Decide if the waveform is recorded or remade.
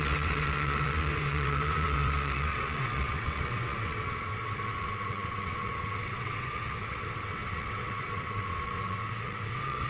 remade